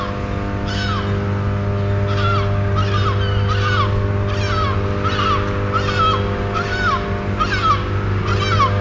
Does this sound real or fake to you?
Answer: real